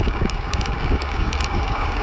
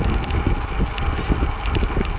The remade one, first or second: first